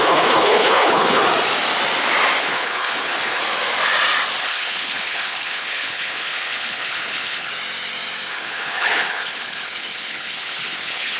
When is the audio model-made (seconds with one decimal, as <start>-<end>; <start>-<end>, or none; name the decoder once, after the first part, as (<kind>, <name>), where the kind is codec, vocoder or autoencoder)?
0.0-1.2 (codec, HILCodec); 2.4-3.4; 4.4-7.5; 8.3-11.2